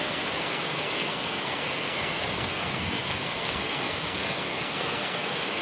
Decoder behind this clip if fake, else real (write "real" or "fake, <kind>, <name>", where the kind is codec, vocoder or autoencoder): fake, codec, SNAC